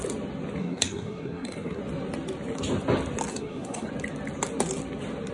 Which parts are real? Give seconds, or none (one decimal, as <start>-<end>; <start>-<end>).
0.0-0.6; 1.8-3.3; 3.9-5.3